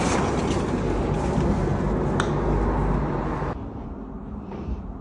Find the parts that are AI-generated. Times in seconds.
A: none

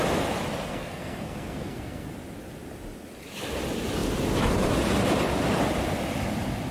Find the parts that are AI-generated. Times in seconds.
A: 0.7-2.1 (codec, SNAC)